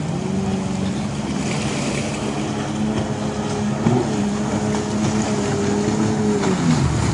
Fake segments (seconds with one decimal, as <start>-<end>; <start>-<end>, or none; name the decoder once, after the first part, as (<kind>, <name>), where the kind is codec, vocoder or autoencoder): none